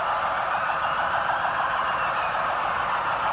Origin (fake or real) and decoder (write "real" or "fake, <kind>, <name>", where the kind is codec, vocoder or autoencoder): real